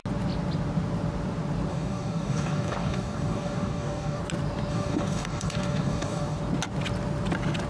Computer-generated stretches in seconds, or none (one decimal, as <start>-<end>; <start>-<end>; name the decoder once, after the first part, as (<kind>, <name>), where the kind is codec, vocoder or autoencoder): 1.7-4.2 (codec, DAC); 4.7-6.4